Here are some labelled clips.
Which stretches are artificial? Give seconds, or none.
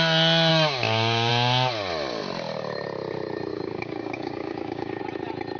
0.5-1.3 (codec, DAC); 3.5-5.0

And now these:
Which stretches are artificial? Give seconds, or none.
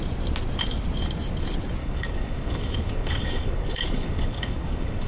1.8-5.1 (codec, DAC)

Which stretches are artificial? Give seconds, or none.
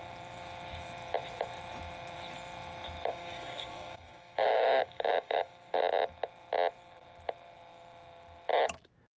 3.1-5.8 (codec, DAC)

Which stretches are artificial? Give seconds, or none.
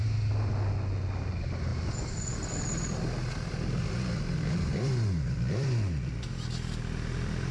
none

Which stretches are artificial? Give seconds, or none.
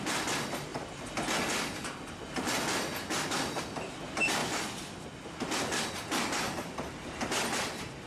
none